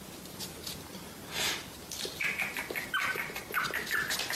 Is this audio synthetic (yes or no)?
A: no